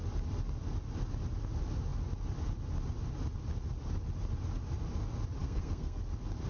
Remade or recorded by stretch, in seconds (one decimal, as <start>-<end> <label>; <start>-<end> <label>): 0.0-5.4 recorded; 5.4-6.0 remade; 6.0-6.5 recorded